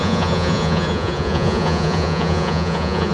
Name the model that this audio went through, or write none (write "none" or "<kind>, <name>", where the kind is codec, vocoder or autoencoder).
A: vocoder, Vocos